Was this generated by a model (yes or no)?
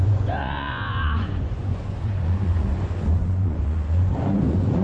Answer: yes